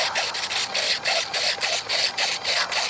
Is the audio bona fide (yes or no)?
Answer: yes